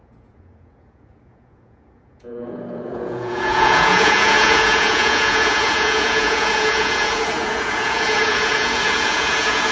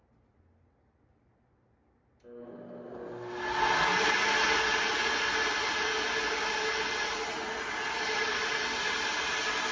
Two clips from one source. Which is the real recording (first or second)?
second